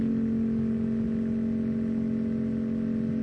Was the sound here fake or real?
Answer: real